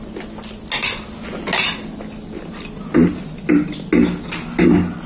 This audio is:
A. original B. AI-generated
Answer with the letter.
A